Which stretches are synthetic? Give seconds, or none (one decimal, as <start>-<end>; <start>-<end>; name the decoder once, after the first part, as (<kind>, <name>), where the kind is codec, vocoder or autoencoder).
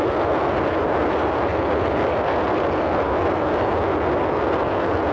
0.0-1.5 (vocoder, BigVGAN v2); 4.6-5.1